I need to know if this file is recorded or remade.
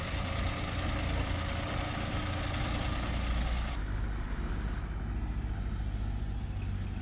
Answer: recorded